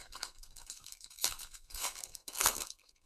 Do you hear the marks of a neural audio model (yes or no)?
yes